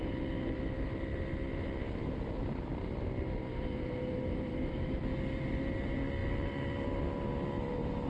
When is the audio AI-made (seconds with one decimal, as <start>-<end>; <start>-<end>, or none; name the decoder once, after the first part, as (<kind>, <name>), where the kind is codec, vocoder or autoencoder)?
4.5-5.0 (autoencoder, DAC-VAE)